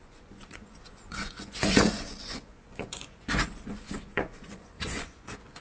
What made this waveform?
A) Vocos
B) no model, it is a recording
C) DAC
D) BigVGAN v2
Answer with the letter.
A